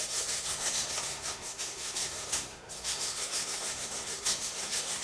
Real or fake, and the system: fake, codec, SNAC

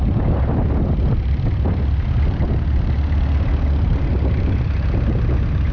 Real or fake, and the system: real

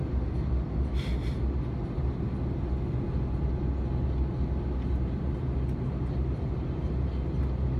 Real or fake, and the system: real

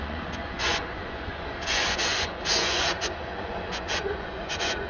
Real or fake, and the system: fake, vocoder, Vocos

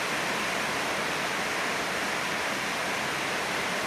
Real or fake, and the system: real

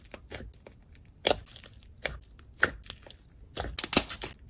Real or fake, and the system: real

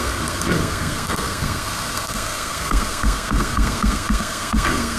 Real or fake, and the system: fake, codec, SNAC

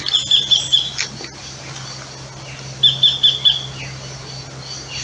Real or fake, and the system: real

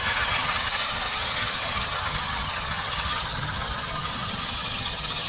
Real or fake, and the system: fake, vocoder, HiFi-GAN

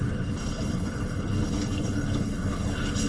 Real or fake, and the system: fake, codec, HILCodec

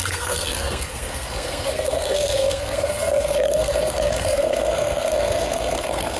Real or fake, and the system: fake, codec, SNAC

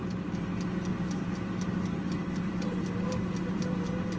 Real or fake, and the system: real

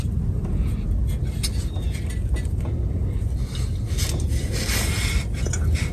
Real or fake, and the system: real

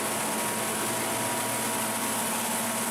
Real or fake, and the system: real